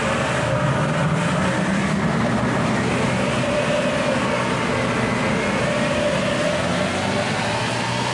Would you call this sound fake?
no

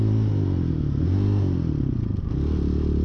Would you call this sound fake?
no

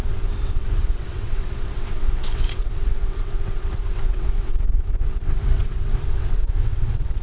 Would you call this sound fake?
yes